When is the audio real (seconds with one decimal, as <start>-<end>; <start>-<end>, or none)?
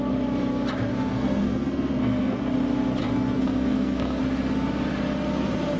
0.0-0.9; 2.4-3.0; 4.2-5.8